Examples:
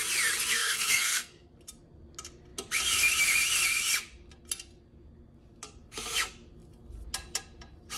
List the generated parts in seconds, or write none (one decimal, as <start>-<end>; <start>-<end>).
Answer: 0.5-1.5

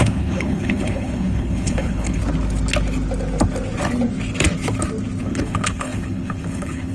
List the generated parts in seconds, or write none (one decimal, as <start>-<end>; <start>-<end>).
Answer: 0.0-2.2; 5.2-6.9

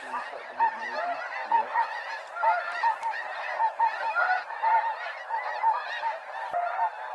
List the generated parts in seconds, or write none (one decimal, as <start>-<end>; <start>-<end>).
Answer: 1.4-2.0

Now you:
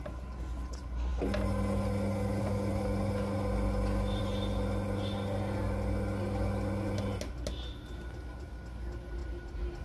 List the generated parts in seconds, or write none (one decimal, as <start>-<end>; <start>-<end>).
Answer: none

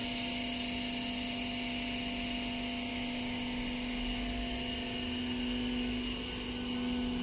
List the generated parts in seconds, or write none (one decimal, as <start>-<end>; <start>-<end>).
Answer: none

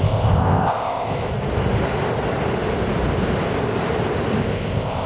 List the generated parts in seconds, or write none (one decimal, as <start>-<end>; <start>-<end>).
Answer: 0.0-1.3; 4.4-5.1

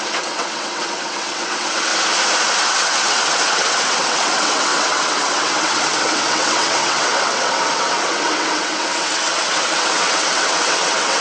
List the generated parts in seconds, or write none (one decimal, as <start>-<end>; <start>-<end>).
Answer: 0.0-1.9; 2.6-11.2